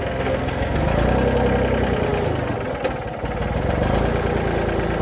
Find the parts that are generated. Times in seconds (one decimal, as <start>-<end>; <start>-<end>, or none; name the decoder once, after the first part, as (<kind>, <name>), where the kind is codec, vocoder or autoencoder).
0.0-0.9 (codec, SNAC)